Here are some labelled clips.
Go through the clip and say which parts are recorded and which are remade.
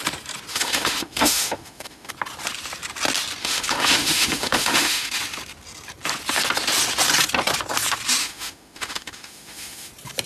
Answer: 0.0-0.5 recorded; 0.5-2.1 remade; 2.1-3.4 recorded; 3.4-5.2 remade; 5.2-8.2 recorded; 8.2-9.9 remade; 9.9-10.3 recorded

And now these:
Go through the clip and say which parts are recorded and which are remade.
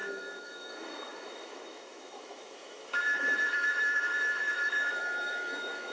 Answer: 0.0-5.9 remade